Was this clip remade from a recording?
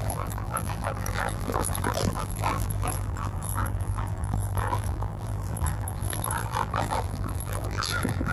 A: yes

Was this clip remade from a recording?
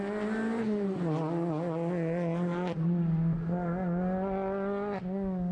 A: no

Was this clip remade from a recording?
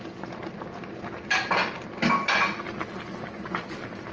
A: no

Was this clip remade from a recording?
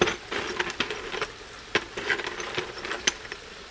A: no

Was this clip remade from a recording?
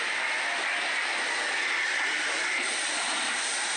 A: no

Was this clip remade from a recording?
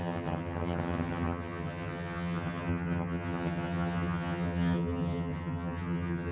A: yes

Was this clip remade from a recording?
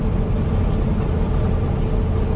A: no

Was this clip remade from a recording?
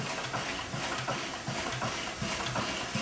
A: no